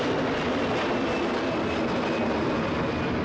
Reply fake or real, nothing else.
real